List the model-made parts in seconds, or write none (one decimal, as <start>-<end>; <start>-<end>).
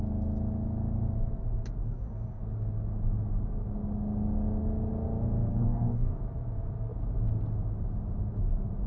1.8-2.4; 5.5-6.2